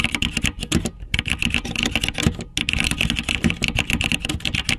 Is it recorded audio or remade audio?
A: recorded